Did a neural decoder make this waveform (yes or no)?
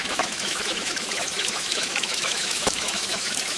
yes